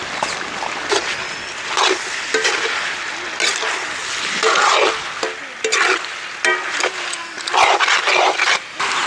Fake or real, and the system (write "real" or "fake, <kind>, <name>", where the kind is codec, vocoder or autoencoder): real